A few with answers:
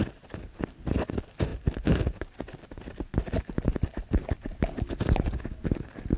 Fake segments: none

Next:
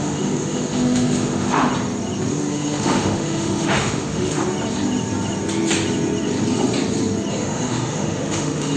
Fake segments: 0.0-1.7 (autoencoder, DAC-VAE); 2.3-4.4; 7.3-8.8

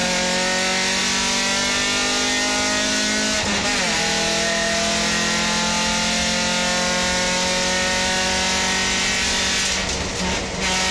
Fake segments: none

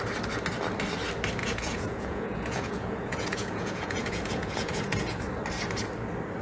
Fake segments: 1.4-5.2 (vocoder, Vocos)